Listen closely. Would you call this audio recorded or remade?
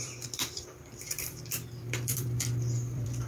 remade